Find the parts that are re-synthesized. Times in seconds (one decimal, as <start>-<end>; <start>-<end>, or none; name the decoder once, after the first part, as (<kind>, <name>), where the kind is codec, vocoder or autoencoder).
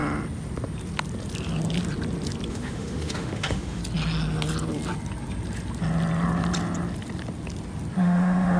2.5-3.8 (autoencoder, DAC-VAE); 8.0-8.6